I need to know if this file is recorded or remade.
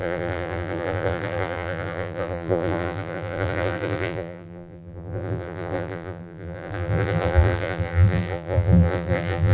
remade